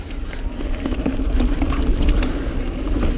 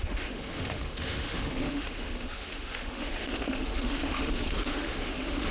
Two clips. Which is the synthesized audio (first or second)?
second